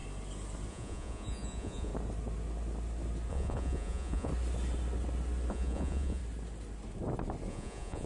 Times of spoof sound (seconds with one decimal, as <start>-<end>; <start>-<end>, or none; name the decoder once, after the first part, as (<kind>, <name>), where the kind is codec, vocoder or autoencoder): 0.7-1.9 (vocoder, Vocos); 3.3-4.3; 5.5-6.2; 7.5-8.1